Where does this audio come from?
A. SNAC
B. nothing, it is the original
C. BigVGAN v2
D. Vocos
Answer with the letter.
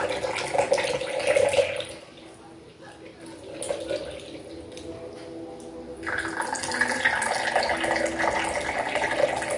B